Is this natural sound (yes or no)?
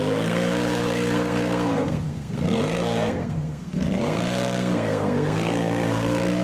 no